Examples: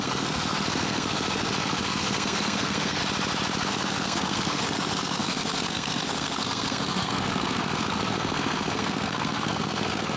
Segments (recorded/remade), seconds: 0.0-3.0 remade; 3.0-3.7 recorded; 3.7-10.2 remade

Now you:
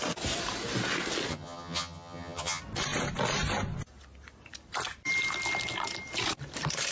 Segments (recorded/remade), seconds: 0.0-1.3 recorded; 1.3-2.6 remade; 2.6-6.9 recorded

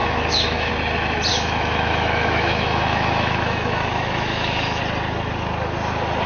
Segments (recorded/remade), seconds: 0.0-0.7 remade; 0.7-1.3 recorded; 1.3-4.8 remade; 4.8-6.3 recorded

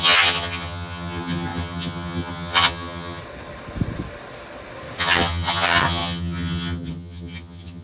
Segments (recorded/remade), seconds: 0.0-3.2 remade; 3.2-5.0 recorded; 5.0-7.8 remade

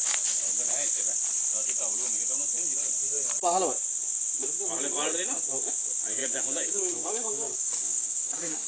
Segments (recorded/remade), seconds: 0.0-6.2 recorded; 6.2-8.7 remade

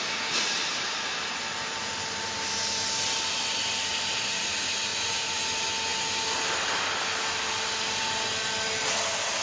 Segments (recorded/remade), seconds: 0.0-4.9 recorded; 4.9-5.4 remade; 5.4-9.4 recorded